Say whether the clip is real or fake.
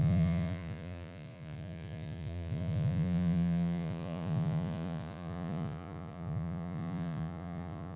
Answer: fake